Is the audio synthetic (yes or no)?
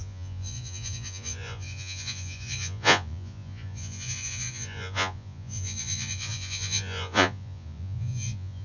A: yes